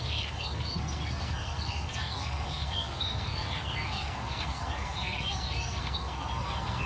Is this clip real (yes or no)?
no